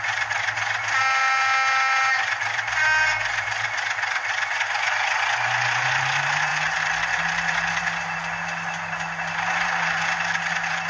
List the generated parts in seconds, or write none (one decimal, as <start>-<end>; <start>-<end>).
none